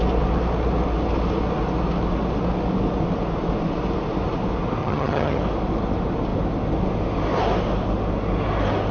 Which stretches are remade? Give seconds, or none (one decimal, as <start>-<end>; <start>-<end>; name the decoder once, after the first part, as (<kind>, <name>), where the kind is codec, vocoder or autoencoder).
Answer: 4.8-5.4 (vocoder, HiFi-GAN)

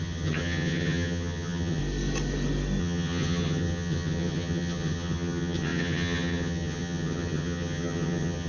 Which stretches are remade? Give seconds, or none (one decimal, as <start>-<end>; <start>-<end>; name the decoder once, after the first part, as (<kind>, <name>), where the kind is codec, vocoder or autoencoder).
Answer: 0.0-1.8 (vocoder, HiFi-GAN); 2.8-8.5

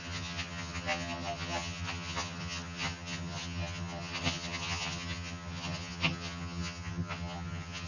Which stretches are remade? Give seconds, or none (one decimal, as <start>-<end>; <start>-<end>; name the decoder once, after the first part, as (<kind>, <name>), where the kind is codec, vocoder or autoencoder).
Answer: 0.0-7.9 (vocoder, HiFi-GAN)

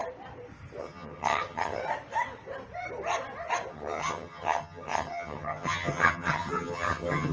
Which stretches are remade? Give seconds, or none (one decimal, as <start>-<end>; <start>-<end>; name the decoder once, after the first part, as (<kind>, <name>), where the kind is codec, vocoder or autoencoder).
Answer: 0.8-1.8 (vocoder, HiFi-GAN); 3.7-7.3

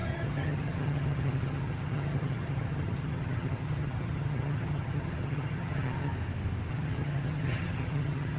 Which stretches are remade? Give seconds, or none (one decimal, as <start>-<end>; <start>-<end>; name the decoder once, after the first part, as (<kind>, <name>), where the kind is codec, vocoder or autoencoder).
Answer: 0.0-6.1 (vocoder, HiFi-GAN); 6.7-8.4